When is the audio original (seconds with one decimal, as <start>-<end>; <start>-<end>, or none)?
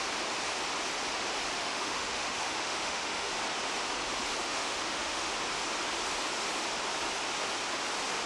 0.0-1.6; 3.3-4.4; 5.3-8.3